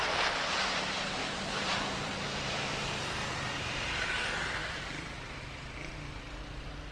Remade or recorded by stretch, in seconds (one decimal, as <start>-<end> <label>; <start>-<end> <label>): 0.0-1.2 recorded; 1.2-4.1 remade; 4.1-4.6 recorded; 4.6-5.4 remade; 5.4-6.9 recorded